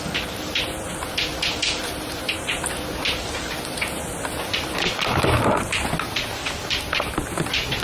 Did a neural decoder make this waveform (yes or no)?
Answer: no